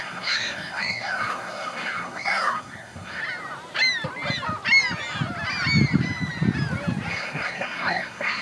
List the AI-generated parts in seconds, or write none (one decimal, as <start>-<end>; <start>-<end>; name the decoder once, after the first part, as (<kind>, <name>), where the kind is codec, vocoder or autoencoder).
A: 0.0-3.2 (codec, SNAC); 7.1-8.4